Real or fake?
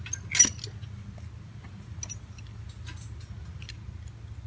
real